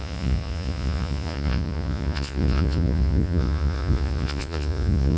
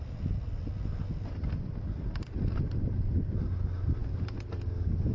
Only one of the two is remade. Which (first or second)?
first